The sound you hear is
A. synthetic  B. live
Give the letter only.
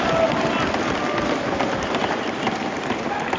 A